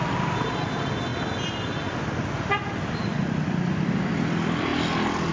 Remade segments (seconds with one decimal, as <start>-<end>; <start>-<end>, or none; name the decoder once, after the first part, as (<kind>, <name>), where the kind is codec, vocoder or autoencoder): 0.0-1.1 (vocoder, BigVGAN v2); 3.1-4.7